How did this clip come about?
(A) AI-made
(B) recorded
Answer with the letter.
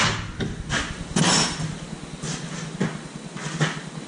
B